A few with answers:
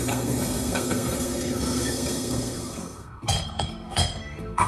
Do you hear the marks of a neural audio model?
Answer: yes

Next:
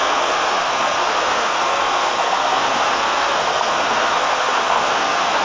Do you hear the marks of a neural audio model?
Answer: yes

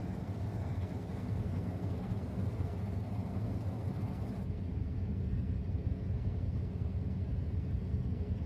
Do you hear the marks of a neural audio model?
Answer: yes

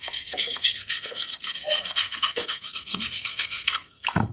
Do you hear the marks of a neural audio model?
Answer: yes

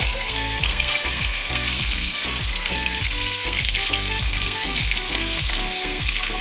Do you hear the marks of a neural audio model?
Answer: yes